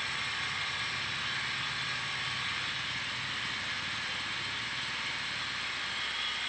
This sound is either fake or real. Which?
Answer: real